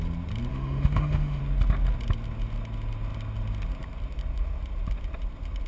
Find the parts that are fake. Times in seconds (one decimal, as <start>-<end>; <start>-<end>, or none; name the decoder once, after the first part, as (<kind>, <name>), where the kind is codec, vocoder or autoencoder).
0.5-1.4 (autoencoder, DAC-VAE)

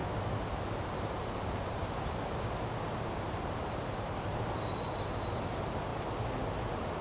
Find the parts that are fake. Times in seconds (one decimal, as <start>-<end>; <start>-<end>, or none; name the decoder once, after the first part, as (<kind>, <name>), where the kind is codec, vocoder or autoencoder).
0.0-2.4 (vocoder, BigVGAN v2); 3.6-4.3